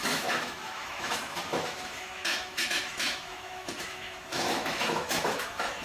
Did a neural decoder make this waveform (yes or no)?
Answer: yes